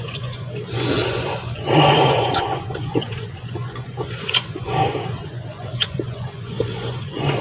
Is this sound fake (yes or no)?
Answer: yes